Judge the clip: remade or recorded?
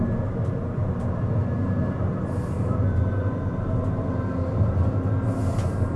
recorded